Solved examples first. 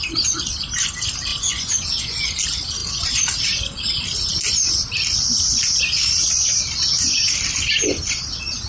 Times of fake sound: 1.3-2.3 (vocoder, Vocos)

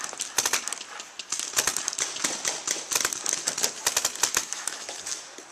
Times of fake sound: 4.4-5.0 (autoencoder, DAC-VAE)

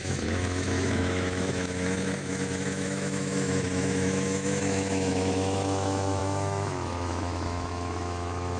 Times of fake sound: 0.0-8.6 (autoencoder, DAC-VAE)

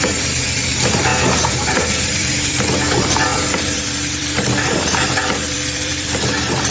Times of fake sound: 0.0-6.7 (vocoder, BigVGAN v2)

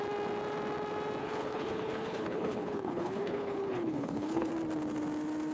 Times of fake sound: 1.2-4.5 (codec, HILCodec)

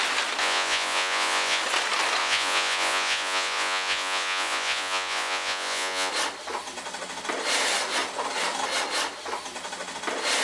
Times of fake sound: 0.4-1.6 (vocoder, Vocos); 2.2-6.1